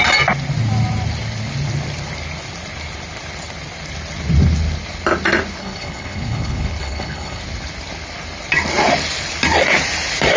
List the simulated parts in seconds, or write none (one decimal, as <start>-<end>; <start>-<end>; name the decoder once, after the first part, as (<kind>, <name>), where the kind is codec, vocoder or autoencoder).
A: 5.6-7.4 (codec, HILCodec)